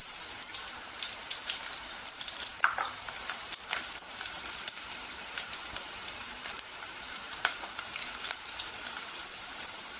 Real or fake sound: fake